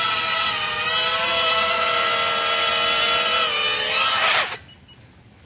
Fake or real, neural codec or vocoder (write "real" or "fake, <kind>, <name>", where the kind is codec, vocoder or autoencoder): real